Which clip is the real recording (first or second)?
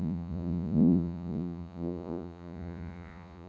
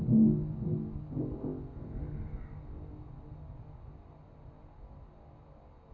second